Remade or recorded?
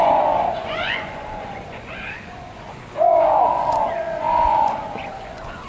remade